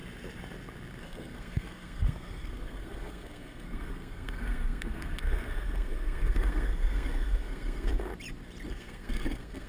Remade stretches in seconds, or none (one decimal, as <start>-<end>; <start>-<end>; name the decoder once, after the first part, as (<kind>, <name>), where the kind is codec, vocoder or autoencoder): 1.0-8.1 (codec, SNAC); 8.7-9.7